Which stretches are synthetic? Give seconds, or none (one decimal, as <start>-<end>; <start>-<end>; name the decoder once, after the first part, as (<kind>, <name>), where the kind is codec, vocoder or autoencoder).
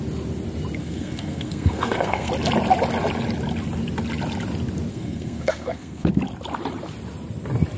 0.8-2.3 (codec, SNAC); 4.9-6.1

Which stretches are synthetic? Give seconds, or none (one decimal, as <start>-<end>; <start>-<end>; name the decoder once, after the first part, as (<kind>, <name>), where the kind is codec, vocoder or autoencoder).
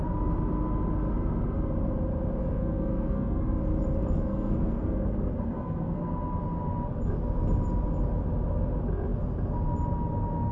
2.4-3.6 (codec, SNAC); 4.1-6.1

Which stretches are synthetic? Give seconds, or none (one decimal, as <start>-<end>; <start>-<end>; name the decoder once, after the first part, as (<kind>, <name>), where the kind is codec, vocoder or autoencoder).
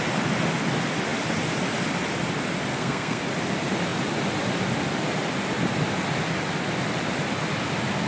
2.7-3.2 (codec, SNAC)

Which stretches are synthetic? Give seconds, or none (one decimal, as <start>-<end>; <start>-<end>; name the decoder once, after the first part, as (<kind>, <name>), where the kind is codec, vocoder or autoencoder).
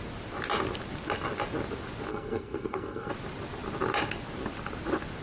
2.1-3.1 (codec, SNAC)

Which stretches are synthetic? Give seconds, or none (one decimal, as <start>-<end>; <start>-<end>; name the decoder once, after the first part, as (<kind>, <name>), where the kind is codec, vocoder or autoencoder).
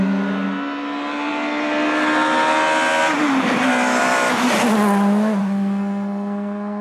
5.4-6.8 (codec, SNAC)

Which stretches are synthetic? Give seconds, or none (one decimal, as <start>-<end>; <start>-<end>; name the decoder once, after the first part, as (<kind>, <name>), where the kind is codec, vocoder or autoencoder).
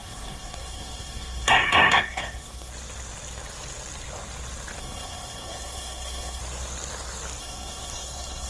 0.0-2.7 (codec, SNAC); 4.8-6.4; 7.4-8.5